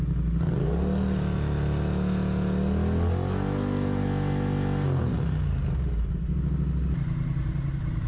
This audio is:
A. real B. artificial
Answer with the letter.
A